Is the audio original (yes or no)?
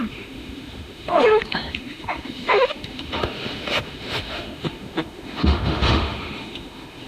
no